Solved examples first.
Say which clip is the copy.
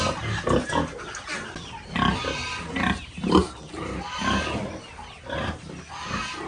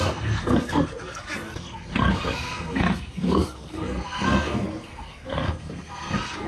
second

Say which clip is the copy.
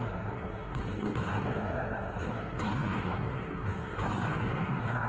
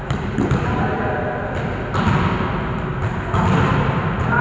first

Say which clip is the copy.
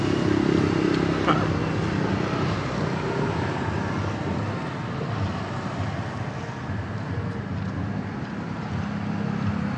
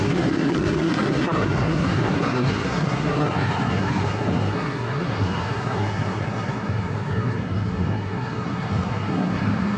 second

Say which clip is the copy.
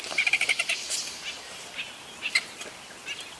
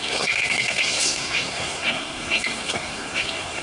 second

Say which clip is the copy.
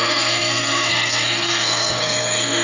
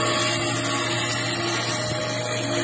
first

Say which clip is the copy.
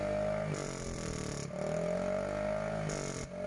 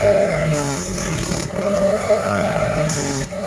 second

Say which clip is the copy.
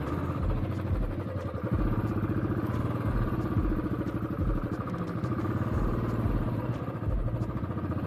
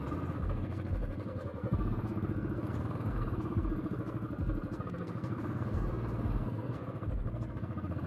second